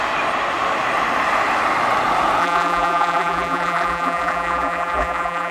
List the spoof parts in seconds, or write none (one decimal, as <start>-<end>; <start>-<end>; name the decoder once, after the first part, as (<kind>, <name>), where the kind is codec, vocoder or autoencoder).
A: 2.4-5.5 (vocoder, BigVGAN v2)